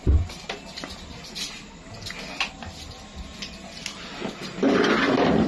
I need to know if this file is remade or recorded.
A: recorded